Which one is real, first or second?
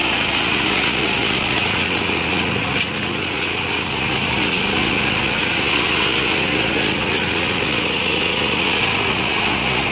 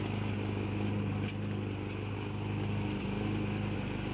second